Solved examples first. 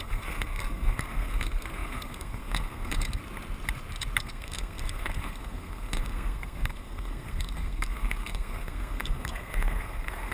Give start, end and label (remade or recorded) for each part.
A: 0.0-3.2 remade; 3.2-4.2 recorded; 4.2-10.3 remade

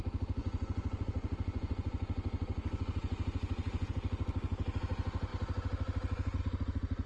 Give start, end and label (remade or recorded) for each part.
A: 0.0-0.4 recorded; 0.4-3.9 remade; 3.9-7.1 recorded

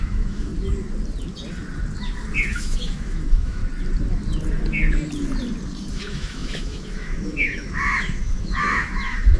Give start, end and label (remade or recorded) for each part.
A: 0.0-0.5 remade; 0.5-2.5 recorded; 2.5-3.6 remade; 3.6-5.9 recorded; 5.9-9.4 remade

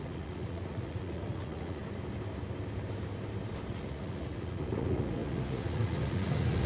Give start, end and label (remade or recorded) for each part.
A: 0.0-1.8 remade; 1.8-3.7 recorded; 3.7-6.7 remade

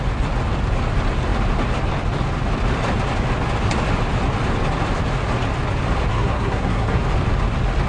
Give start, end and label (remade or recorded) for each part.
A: 0.0-6.1 recorded; 6.1-7.0 remade; 7.0-7.9 recorded

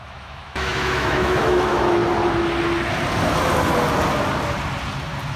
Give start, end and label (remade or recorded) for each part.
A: 0.0-2.0 remade; 2.0-5.4 recorded

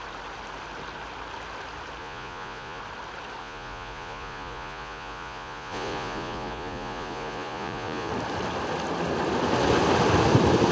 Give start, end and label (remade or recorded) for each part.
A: 0.0-2.0 recorded; 2.0-2.8 remade; 2.8-3.4 recorded; 3.4-8.1 remade; 8.1-10.7 recorded

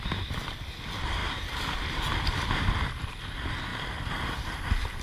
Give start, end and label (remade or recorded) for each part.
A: 0.0-1.2 recorded; 1.2-3.3 remade; 3.3-3.7 recorded; 3.7-4.6 remade; 4.6-5.0 recorded